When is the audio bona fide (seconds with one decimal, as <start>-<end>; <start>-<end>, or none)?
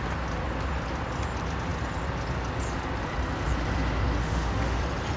0.0-4.2; 4.8-5.2